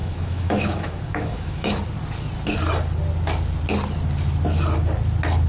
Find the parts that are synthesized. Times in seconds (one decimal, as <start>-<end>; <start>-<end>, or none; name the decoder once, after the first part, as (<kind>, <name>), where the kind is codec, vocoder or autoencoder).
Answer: 0.0-1.8 (autoencoder, DAC-VAE)